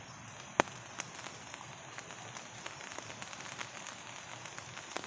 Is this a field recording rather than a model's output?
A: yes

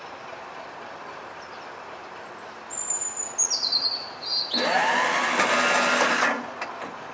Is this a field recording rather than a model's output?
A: yes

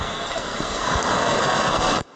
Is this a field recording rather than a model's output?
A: no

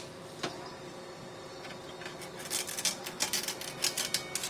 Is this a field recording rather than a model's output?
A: yes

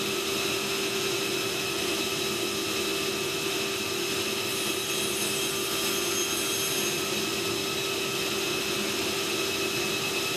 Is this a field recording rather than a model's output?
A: yes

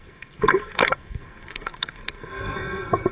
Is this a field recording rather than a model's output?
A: no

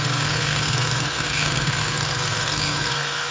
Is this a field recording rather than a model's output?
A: no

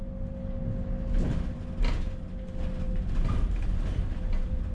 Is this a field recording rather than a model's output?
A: yes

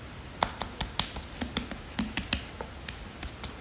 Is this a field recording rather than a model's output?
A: yes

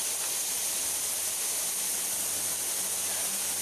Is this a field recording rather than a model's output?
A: yes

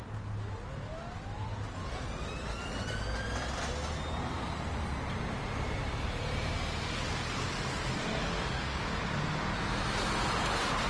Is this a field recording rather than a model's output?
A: yes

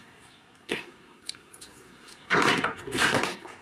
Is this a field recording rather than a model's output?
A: no